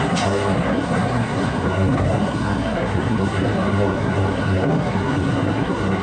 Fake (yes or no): yes